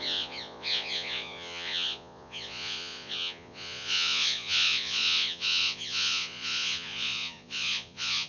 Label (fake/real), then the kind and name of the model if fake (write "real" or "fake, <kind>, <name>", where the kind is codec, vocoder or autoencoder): fake, vocoder, Vocos